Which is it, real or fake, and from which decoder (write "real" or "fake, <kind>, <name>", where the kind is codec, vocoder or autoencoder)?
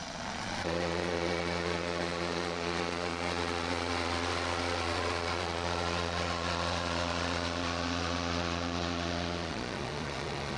fake, vocoder, Vocos